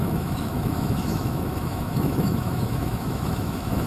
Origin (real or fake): fake